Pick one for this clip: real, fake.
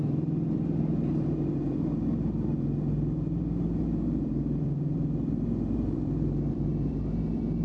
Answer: fake